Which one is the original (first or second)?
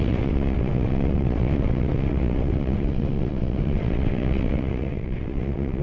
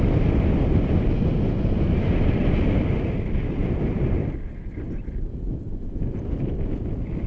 second